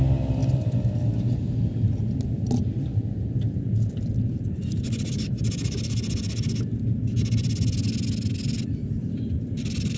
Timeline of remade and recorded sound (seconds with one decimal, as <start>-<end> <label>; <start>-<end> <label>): 0.0-10.0 recorded